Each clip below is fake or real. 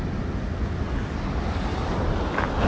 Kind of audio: real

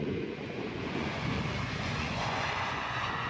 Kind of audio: fake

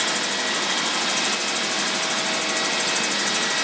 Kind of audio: real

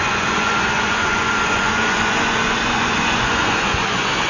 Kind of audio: fake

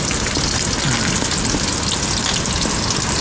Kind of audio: real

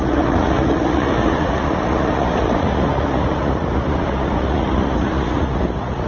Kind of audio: fake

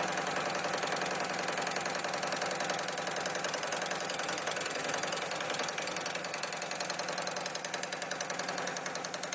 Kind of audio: real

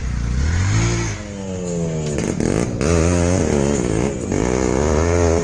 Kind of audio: real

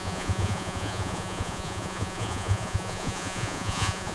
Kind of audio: fake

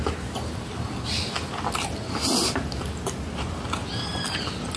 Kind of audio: real